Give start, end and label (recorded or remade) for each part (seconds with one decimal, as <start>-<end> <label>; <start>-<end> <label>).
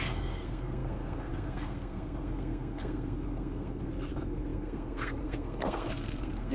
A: 0.0-6.5 remade